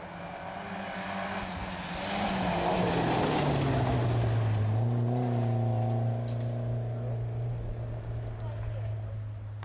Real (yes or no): yes